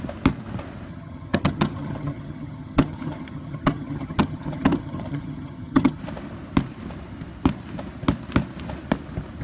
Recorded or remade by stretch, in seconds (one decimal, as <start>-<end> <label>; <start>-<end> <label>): 0.0-0.9 recorded; 0.9-6.0 remade; 6.0-9.4 recorded